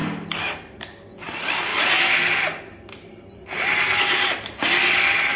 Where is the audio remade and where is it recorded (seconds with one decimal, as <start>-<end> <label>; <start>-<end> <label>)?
0.0-5.4 recorded